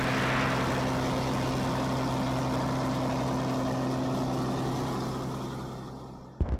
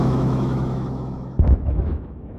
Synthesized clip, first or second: second